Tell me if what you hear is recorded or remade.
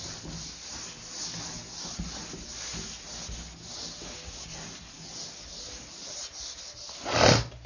recorded